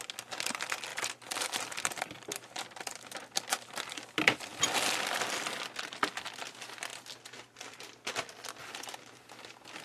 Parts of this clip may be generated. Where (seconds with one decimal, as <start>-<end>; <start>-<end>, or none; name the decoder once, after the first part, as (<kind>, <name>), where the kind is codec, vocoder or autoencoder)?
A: none

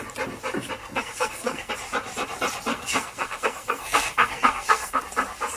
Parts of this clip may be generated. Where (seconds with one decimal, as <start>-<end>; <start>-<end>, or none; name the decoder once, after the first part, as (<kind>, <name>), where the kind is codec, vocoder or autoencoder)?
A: 0.8-1.7 (codec, SNAC); 2.7-5.0